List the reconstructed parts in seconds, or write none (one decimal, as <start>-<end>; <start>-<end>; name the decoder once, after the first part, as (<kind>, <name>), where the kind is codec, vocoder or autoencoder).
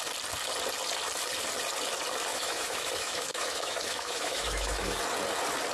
2.3-5.0 (autoencoder, DAC-VAE)